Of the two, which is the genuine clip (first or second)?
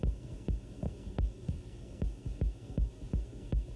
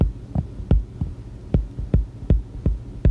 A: second